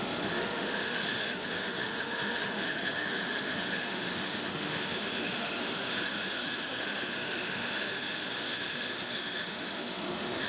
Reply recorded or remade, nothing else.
remade